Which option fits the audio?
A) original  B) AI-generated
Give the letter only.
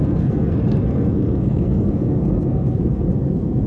B